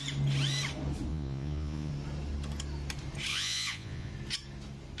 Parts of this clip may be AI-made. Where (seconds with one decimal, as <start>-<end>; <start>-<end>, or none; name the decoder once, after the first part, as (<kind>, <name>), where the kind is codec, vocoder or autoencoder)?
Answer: 1.1-1.9 (vocoder, Vocos); 3.3-4.1